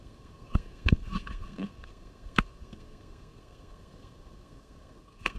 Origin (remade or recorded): remade